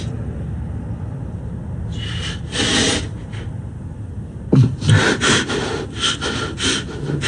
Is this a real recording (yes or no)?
yes